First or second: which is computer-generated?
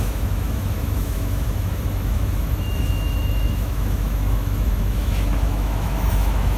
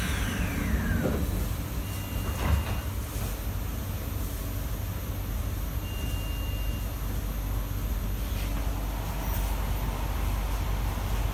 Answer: first